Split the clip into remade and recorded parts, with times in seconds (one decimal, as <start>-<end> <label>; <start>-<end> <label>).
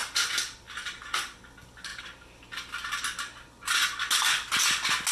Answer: 0.0-5.1 recorded